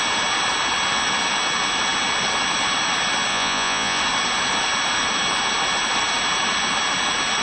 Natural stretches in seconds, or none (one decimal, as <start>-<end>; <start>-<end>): 0.0-3.3; 4.0-7.4